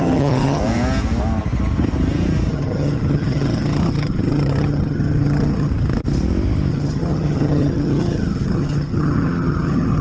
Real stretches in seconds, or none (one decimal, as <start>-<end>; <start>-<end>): 0.6-2.5; 5.7-6.7